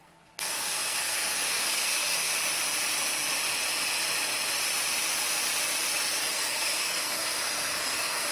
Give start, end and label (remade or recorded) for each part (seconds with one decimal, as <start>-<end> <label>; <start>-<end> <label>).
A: 0.0-2.3 remade; 2.3-6.3 recorded; 6.3-8.3 remade